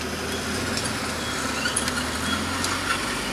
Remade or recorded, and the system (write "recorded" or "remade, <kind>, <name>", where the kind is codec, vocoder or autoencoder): recorded